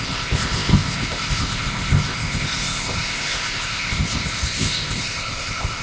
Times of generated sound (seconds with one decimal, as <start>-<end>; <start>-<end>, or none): 0.0-5.8